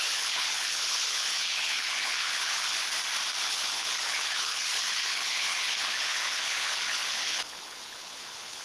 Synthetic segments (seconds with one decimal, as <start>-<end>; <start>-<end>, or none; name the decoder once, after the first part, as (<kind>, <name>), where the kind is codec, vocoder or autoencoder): 0.0-2.8 (codec, HILCodec); 3.4-8.6